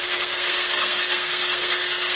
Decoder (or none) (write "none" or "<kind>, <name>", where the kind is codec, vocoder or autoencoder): codec, SNAC